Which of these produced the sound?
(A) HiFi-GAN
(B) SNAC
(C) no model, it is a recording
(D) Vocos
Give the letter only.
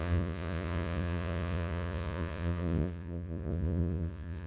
D